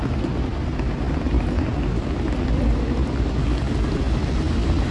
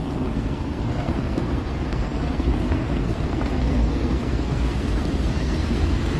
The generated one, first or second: second